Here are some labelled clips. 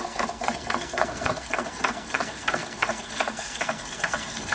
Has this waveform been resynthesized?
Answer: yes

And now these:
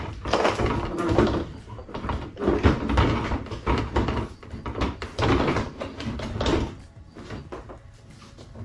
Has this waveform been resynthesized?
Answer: no